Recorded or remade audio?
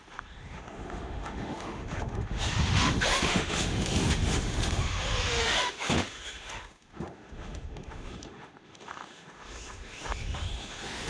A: remade